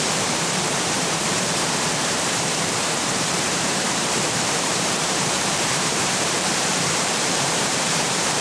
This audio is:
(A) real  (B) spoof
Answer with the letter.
B